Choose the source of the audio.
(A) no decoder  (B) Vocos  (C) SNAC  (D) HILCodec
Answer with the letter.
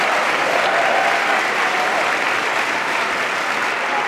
A